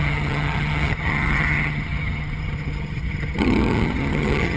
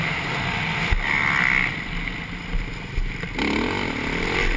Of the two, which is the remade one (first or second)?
first